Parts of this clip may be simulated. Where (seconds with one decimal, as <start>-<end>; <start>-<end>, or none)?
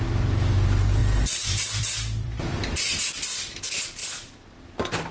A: 1.0-2.6; 4.0-5.1